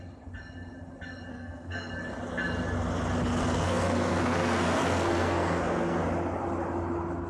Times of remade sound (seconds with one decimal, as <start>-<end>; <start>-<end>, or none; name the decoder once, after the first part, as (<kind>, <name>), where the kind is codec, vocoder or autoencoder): 1.3-1.9 (codec, SNAC); 3.4-6.0